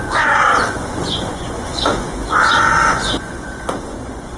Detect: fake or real fake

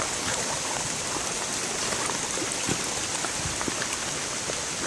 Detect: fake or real real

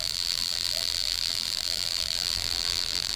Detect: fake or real fake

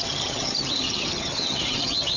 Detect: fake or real fake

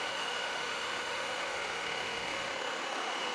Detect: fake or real fake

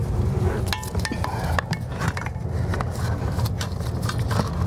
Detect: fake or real real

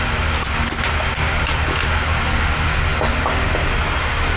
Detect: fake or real real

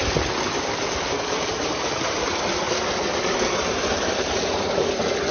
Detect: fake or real real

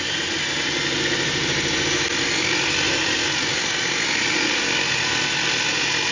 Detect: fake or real real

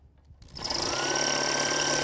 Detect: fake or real real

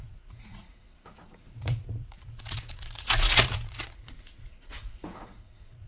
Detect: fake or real fake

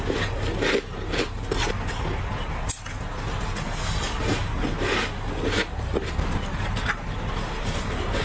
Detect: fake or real real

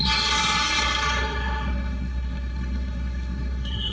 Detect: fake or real fake